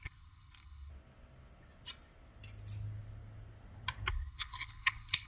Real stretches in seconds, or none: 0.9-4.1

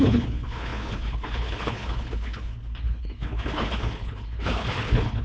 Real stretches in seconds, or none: none

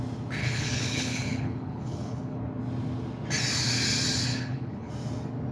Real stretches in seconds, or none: 0.0-0.4; 2.4-4.3; 4.9-5.5

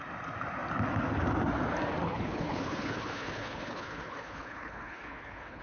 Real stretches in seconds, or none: 0.0-2.0